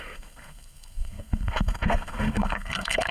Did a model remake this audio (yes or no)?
yes